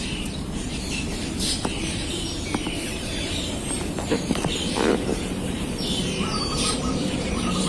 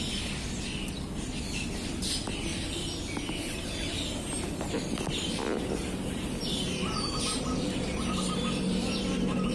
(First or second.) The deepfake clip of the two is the first